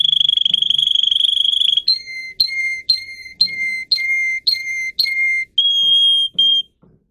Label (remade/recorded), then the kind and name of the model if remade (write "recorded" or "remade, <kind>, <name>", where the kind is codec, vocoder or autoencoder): recorded